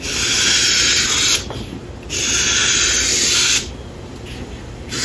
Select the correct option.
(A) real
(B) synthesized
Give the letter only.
A